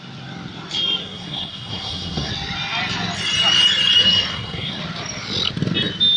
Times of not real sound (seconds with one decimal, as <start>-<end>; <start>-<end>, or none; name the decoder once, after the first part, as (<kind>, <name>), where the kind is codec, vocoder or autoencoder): 1.0-2.3 (codec, SNAC); 4.3-4.8